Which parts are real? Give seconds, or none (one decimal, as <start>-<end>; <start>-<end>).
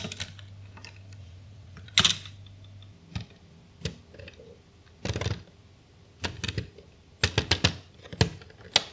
0.0-1.2; 1.9-8.9